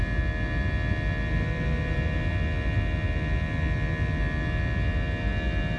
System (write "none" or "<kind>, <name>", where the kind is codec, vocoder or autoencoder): none